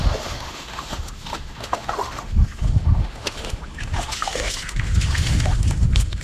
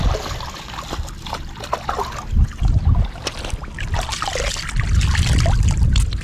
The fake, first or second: first